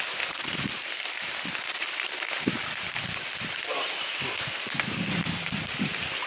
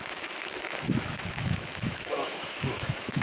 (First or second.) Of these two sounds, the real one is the first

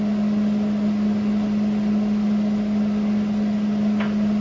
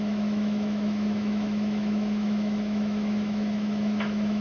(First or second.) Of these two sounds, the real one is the first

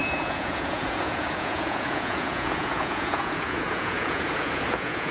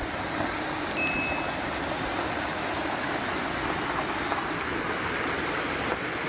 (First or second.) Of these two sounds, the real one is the second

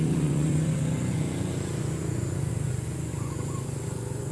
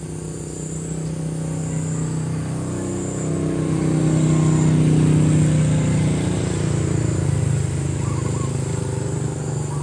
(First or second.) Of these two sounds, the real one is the second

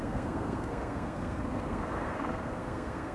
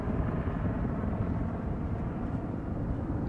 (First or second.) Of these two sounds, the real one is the second